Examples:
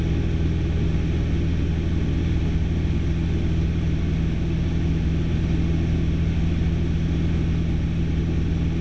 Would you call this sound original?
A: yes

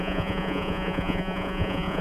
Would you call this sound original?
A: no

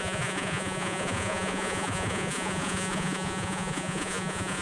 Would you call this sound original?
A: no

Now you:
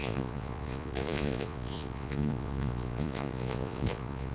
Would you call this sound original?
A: no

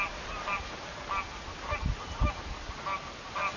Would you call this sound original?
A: yes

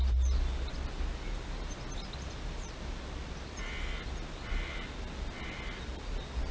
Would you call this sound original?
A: yes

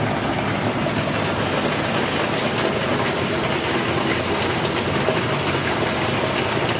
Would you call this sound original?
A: yes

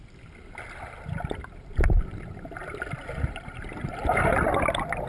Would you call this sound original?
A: yes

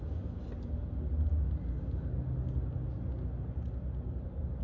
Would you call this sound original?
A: yes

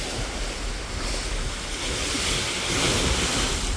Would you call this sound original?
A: yes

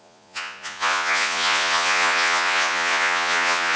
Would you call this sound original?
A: no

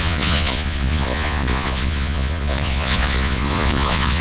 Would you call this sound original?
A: no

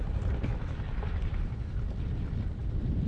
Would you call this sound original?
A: yes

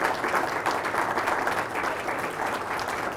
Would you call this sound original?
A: yes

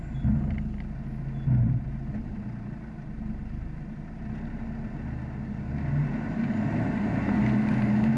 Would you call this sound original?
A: yes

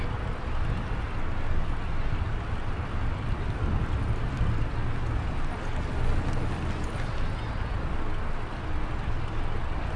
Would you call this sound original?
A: yes